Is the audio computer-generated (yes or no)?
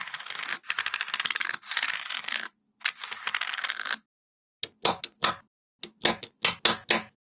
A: no